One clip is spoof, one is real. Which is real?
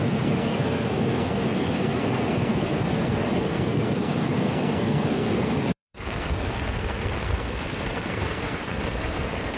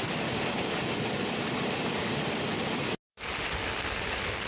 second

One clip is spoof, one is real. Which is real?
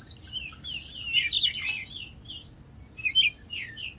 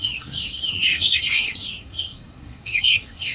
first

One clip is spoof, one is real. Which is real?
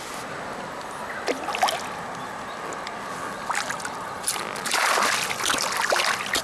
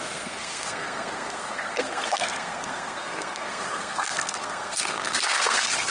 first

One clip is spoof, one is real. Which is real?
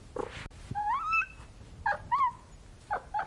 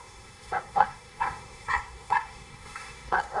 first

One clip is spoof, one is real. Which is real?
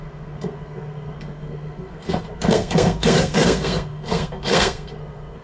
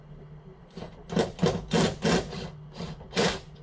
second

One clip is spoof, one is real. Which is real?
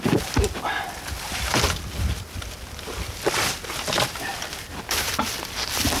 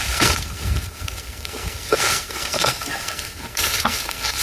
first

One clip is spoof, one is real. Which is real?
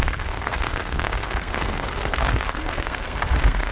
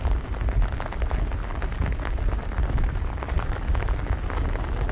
second